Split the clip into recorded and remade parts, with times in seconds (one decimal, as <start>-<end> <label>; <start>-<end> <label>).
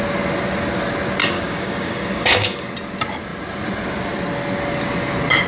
0.0-1.2 recorded; 1.2-2.7 remade; 2.7-5.5 recorded